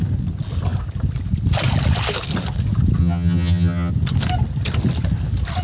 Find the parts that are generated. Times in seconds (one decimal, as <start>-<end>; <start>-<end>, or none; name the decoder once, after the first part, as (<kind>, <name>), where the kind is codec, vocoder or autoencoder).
3.0-3.9 (vocoder, HiFi-GAN)